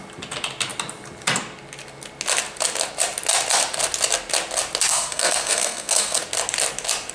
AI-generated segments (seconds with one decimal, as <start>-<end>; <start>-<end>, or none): 4.9-6.2

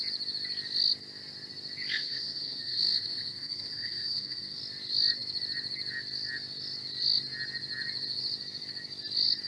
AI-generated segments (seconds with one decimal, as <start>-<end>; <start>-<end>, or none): 2.0-4.6